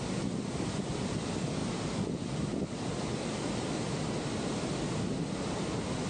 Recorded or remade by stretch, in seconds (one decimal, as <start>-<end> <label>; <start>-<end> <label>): 0.0-6.1 recorded